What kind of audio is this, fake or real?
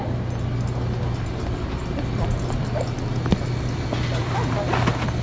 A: real